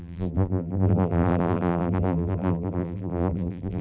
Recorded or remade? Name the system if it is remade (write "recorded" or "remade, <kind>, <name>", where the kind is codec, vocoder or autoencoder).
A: remade, vocoder, BigVGAN v2